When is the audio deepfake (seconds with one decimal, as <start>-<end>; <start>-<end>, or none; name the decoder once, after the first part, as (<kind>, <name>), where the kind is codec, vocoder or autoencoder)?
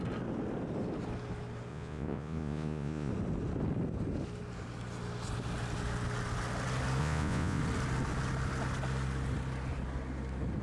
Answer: 1.7-3.1 (vocoder, Vocos); 7.0-7.6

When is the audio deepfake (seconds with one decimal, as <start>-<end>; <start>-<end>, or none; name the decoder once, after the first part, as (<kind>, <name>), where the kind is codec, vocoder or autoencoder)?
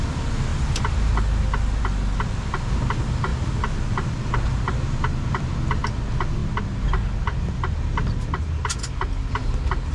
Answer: none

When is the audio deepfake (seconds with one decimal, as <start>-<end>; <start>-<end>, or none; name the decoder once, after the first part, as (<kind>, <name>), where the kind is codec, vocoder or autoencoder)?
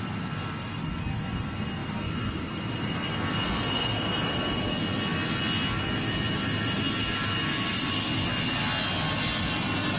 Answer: 1.8-4.5 (vocoder, BigVGAN v2)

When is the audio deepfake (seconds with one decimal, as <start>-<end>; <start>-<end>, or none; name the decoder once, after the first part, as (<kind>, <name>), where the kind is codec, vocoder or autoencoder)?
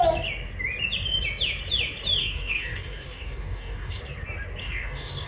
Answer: 2.2-4.0 (codec, DAC); 4.6-5.3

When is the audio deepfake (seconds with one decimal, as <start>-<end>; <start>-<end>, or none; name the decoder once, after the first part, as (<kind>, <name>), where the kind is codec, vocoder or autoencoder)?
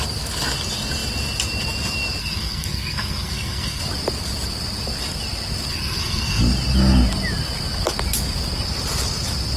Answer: 2.2-3.8 (codec, SNAC); 5.7-6.4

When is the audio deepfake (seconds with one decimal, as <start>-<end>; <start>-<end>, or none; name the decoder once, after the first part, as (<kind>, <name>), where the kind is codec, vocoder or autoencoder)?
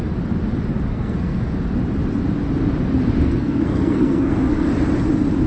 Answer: 0.9-1.4 (codec, SNAC); 3.2-4.7